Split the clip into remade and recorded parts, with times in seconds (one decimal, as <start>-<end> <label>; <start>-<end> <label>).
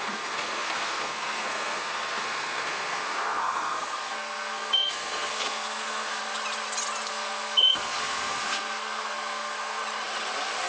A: 0.0-6.2 remade; 6.2-7.1 recorded; 7.1-9.8 remade; 9.8-10.7 recorded